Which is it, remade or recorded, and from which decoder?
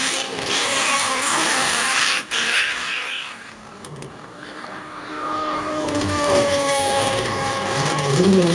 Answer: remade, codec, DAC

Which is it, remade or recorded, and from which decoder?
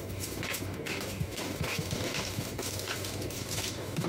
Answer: remade, codec, DAC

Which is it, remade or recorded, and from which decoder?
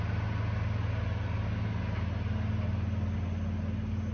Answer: recorded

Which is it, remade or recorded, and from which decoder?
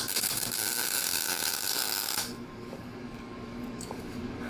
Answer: remade, codec, DAC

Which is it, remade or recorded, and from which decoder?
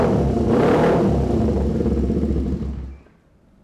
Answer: recorded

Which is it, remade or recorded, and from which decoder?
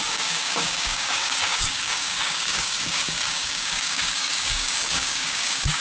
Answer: remade, codec, DAC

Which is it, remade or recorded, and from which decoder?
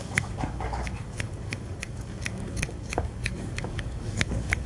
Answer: remade, codec, DAC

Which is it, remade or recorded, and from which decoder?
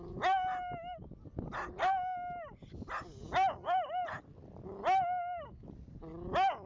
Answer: recorded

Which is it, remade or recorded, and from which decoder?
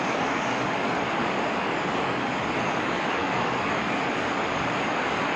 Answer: remade, codec, DAC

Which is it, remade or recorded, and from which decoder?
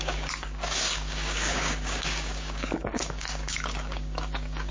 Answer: remade, codec, DAC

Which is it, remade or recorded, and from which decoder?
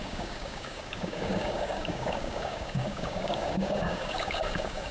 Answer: remade, codec, DAC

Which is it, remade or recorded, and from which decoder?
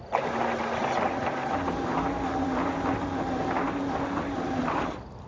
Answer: recorded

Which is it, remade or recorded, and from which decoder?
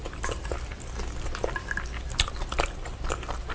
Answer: recorded